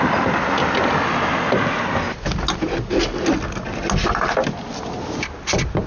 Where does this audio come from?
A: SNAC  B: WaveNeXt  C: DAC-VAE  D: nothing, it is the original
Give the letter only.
D